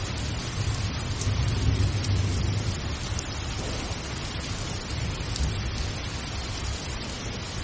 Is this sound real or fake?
real